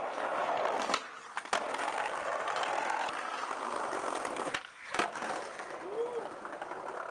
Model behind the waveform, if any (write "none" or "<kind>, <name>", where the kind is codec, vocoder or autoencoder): none